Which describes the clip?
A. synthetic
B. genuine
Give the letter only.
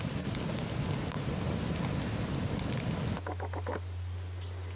B